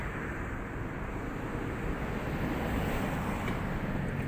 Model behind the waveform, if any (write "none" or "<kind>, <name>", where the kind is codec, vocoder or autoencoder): none